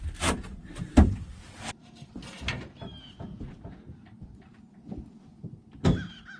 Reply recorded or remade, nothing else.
recorded